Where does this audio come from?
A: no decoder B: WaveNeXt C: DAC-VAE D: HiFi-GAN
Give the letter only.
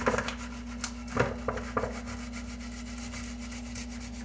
A